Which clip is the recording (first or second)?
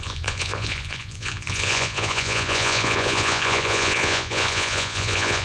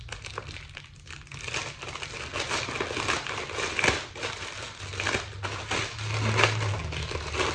second